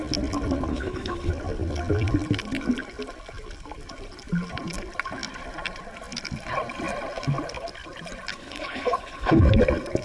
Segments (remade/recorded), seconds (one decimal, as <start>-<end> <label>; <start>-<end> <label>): 0.0-0.7 recorded; 0.7-1.3 remade; 1.3-8.3 recorded; 8.3-9.4 remade; 9.4-10.0 recorded

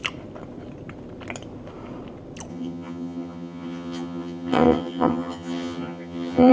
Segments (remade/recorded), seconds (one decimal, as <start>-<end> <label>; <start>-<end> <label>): 0.0-2.5 recorded; 2.5-6.5 remade

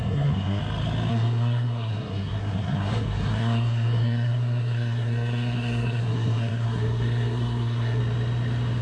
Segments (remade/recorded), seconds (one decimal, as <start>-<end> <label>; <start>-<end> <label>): 0.0-0.6 remade; 0.6-1.1 recorded; 1.1-8.0 remade; 8.0-8.8 recorded